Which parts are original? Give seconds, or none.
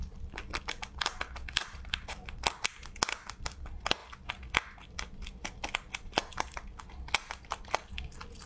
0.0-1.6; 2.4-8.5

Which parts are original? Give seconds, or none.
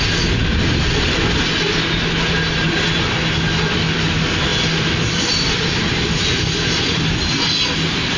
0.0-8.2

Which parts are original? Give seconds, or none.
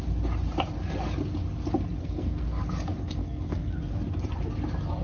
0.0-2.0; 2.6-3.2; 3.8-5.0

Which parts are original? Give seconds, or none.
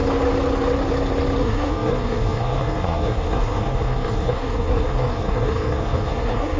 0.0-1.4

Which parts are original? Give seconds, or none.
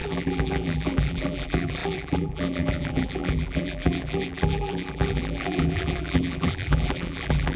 none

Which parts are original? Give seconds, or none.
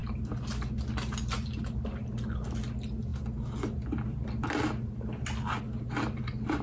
0.0-6.6